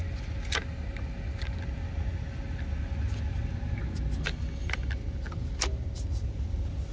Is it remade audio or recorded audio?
recorded